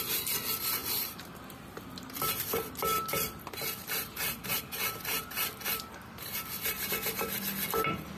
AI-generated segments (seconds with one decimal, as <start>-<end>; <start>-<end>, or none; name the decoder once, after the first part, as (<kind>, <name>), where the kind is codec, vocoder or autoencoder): 0.0-0.8 (vocoder, BigVGAN v2); 2.4-8.2